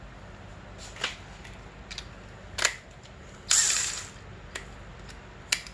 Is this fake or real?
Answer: real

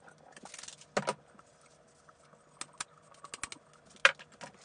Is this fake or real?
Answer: real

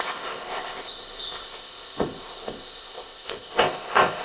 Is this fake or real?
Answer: fake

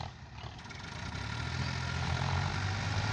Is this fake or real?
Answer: real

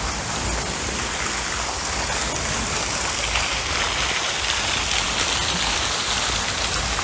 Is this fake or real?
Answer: real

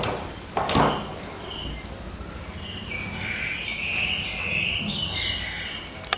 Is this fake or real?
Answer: real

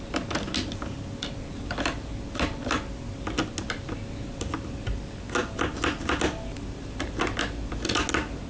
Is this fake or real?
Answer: real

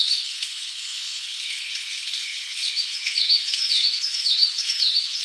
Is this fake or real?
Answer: fake